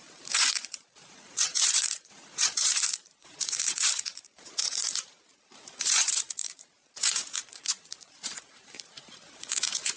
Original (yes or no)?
no